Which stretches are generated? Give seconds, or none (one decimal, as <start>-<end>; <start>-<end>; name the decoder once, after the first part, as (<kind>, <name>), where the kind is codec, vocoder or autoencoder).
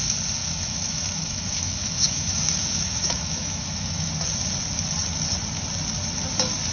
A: 0.4-4.1 (autoencoder, DAC-VAE)